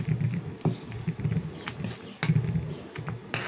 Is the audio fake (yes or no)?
no